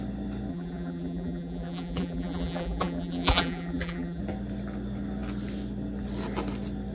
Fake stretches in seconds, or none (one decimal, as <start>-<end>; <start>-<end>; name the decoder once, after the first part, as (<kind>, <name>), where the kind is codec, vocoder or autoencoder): 0.5-4.2 (vocoder, BigVGAN v2)